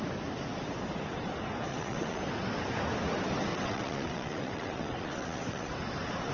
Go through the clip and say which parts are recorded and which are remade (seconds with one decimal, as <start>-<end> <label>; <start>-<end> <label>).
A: 0.0-1.7 recorded; 1.7-2.2 remade; 2.2-3.5 recorded; 3.5-5.7 remade; 5.7-6.3 recorded